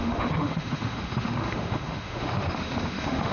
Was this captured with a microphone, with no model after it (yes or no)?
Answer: no